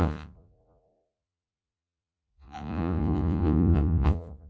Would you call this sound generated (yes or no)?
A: yes